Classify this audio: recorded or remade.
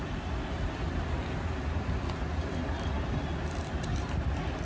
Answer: recorded